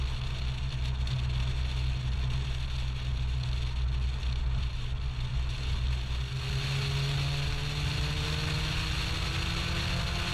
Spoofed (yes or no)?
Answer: no